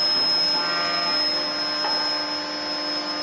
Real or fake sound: real